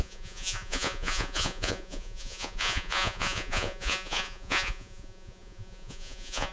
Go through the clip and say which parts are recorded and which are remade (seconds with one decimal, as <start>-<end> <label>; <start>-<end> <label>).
0.0-6.5 remade